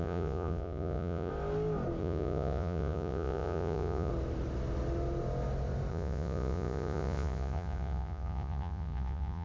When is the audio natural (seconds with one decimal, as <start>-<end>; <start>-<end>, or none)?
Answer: 1.3-2.0; 4.1-5.9